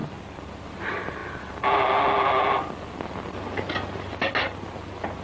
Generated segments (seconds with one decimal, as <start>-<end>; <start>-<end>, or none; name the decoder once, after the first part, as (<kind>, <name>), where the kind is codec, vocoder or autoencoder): none